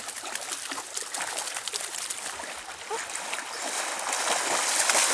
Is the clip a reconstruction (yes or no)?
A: no